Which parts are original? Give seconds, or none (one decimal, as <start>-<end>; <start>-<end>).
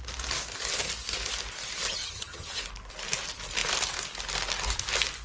0.0-2.0; 2.6-5.2